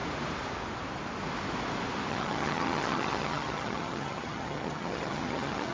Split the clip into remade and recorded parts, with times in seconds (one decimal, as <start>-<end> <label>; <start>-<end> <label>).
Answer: 0.0-2.1 recorded; 2.1-5.7 remade